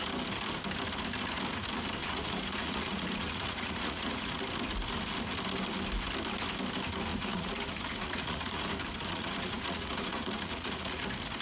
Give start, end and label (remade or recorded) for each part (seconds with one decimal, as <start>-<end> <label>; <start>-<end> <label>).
0.0-2.0 recorded; 2.0-4.4 remade; 4.4-7.1 recorded; 7.1-8.7 remade; 8.7-9.1 recorded; 9.1-11.0 remade; 11.0-11.4 recorded